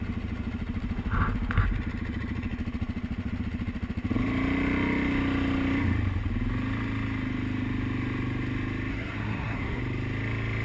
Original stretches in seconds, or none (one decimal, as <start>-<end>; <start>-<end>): 0.0-8.9; 9.8-10.6